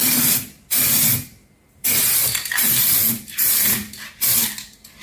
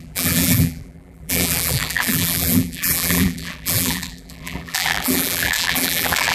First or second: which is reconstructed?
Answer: second